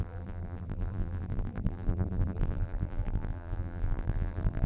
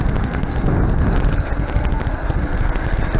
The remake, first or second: first